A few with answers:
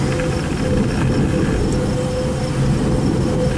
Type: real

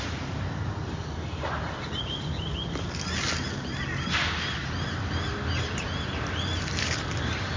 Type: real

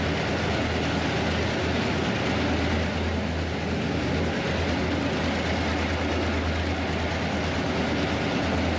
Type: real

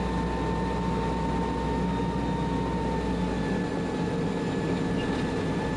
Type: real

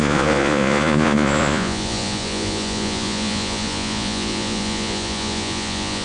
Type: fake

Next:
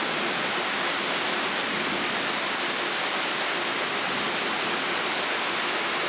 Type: real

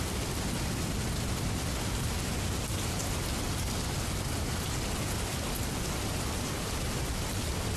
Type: real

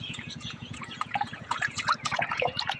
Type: fake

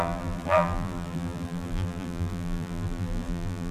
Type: fake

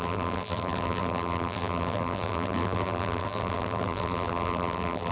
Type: fake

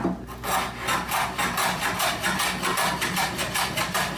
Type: real